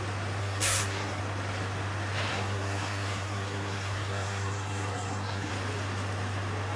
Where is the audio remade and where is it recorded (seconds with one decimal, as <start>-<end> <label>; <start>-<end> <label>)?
0.0-0.4 recorded; 0.4-1.2 remade; 1.2-2.3 recorded; 2.3-5.5 remade; 5.5-6.8 recorded